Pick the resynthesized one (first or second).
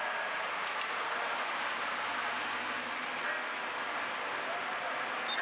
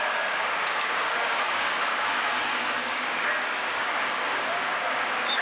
second